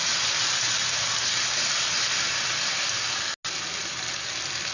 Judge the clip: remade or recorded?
recorded